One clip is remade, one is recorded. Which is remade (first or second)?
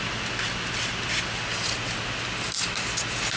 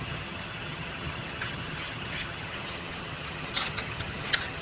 second